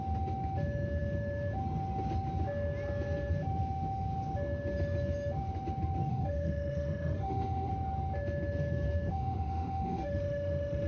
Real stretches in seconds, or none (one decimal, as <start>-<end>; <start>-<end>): 0.0-6.1; 7.7-9.1